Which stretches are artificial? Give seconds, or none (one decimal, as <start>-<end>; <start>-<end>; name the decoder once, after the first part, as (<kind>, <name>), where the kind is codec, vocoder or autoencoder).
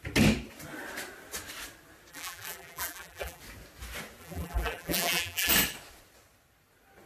2.1-3.4 (vocoder, BigVGAN v2); 4.2-5.5